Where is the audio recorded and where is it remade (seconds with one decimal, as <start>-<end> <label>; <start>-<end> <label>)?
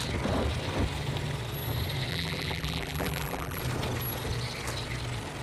0.0-2.1 recorded; 2.1-3.6 remade; 3.6-5.4 recorded